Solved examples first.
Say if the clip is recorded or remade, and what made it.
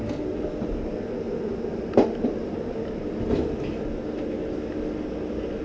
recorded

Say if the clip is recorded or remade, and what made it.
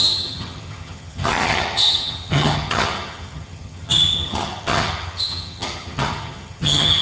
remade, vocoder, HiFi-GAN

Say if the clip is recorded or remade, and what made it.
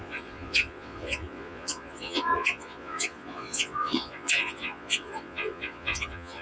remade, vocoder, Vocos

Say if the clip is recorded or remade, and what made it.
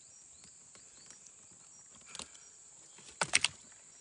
recorded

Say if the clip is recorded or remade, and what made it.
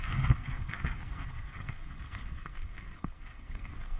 remade, codec, SNAC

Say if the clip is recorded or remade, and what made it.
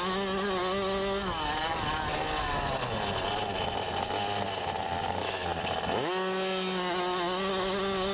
recorded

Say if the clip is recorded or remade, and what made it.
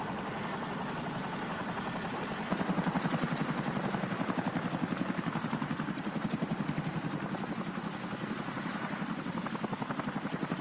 recorded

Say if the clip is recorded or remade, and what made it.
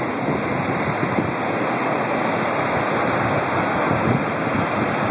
recorded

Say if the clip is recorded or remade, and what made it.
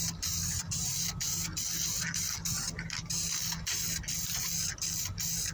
recorded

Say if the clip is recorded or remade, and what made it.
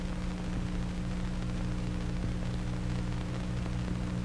recorded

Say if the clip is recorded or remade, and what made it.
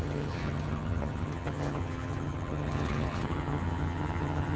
remade, vocoder, HiFi-GAN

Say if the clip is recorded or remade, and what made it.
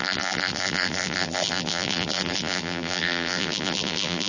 remade, vocoder, BigVGAN v2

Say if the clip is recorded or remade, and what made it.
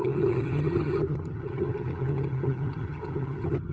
remade, vocoder, HiFi-GAN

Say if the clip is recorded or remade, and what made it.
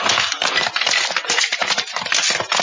recorded